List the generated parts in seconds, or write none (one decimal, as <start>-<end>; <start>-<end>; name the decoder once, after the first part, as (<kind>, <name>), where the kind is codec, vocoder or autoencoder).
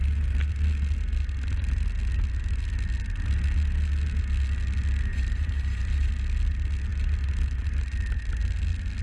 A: 5.1-6.1 (vocoder, BigVGAN v2)